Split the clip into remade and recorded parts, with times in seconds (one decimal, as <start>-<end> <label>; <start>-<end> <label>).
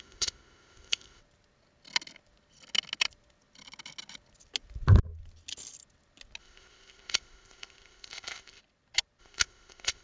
0.0-1.2 remade; 1.2-6.4 recorded; 6.4-8.6 remade; 8.6-9.2 recorded; 9.2-10.0 remade